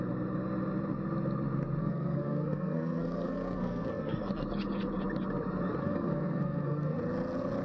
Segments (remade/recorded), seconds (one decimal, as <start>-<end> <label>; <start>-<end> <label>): 0.0-1.8 recorded; 1.8-4.2 remade; 4.2-5.8 recorded; 5.8-7.0 remade; 7.0-7.6 recorded